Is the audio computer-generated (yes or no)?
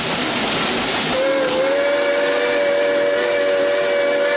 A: no